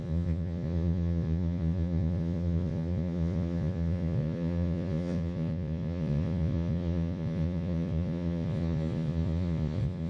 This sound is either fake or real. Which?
fake